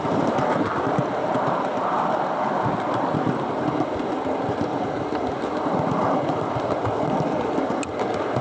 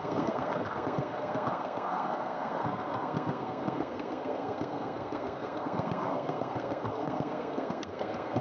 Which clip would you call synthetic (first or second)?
second